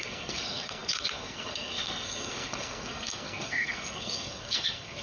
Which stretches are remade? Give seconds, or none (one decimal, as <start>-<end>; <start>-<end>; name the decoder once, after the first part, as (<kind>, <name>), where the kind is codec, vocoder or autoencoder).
0.0-5.0 (codec, SNAC)